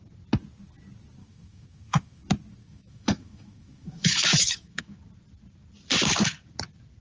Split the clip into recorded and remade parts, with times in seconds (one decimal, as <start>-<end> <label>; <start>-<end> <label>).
0.0-1.2 recorded; 1.2-2.2 remade; 2.2-2.6 recorded; 2.6-5.0 remade; 5.0-7.0 recorded